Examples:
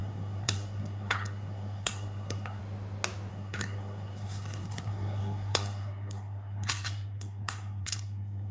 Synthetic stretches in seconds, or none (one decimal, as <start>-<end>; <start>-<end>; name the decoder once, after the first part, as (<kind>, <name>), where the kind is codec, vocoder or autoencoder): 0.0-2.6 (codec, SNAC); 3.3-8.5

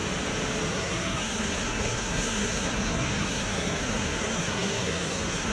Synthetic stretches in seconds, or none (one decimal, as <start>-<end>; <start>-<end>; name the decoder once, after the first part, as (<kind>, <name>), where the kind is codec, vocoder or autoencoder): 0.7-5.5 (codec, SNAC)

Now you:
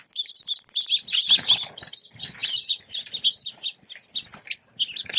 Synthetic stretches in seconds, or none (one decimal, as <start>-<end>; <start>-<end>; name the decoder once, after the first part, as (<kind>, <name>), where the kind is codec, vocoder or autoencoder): none

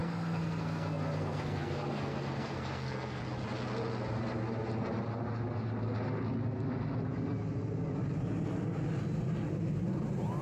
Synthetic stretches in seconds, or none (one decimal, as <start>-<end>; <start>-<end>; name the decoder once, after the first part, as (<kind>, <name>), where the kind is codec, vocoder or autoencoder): 0.0-3.2 (codec, SNAC)